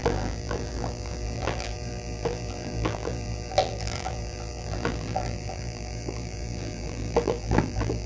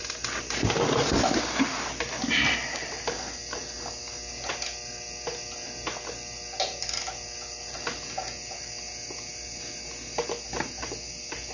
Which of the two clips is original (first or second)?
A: second